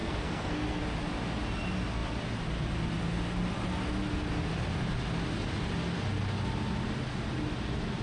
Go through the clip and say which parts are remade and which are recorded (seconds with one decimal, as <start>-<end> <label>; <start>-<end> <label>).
0.0-0.8 remade; 0.8-8.0 recorded